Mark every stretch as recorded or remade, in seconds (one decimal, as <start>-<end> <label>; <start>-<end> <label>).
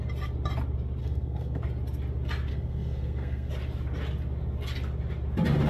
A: 0.0-1.0 recorded; 1.0-1.6 remade; 1.6-2.5 recorded; 2.5-3.5 remade; 3.5-5.7 recorded